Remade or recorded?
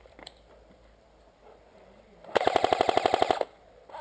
recorded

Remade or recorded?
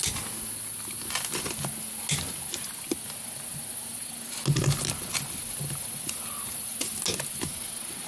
recorded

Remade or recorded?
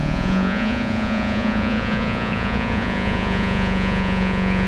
remade